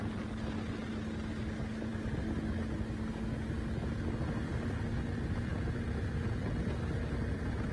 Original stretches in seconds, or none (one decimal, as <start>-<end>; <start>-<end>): 0.0-7.7